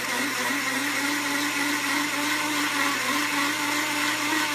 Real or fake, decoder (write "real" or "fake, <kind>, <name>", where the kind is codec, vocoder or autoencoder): real